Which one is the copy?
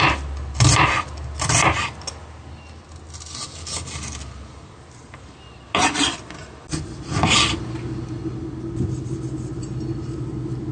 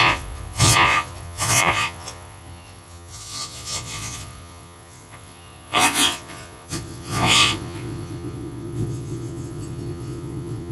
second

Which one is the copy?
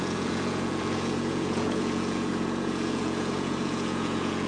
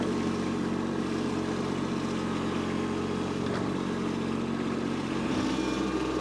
first